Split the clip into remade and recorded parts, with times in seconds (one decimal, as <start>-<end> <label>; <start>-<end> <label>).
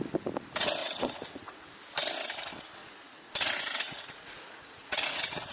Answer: 0.0-0.8 recorded; 0.8-1.7 remade; 1.7-2.8 recorded; 2.8-3.3 remade; 3.3-3.9 recorded; 3.9-5.5 remade